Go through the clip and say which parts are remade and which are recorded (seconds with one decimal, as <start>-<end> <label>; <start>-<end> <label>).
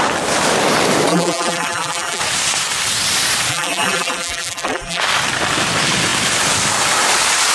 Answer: 0.0-1.1 recorded; 1.1-2.2 remade; 2.2-3.5 recorded; 3.5-5.0 remade; 5.0-7.5 recorded